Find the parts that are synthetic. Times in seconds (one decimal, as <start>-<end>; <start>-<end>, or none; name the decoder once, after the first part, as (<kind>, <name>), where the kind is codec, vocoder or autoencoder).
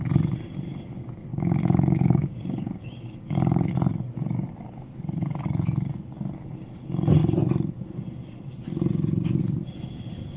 1.3-3.7 (codec, DAC)